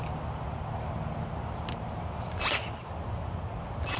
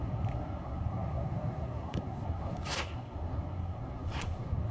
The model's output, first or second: second